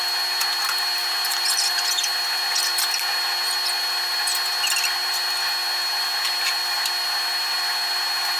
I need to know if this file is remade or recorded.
recorded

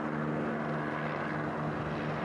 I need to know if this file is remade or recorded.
recorded